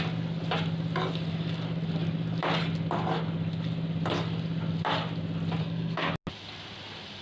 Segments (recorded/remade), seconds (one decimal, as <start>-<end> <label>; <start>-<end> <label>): 0.0-5.6 recorded; 5.6-6.1 remade; 6.1-7.2 recorded